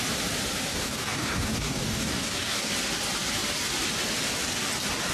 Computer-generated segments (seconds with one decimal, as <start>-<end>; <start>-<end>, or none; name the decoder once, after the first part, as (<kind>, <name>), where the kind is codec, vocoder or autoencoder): 0.7-2.7 (codec, DAC)